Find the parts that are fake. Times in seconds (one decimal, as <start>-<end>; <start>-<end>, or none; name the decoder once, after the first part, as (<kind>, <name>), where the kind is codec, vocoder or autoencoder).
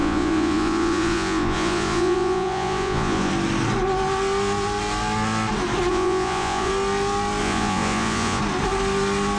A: 0.0-3.3 (vocoder, Vocos); 5.9-6.7; 7.4-8.4